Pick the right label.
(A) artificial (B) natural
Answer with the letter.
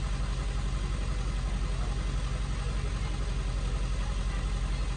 B